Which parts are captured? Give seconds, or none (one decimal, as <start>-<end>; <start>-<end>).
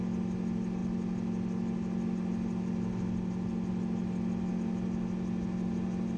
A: 0.0-6.2